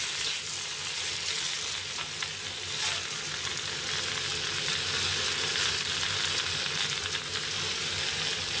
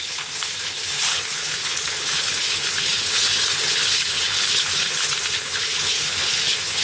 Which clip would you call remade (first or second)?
second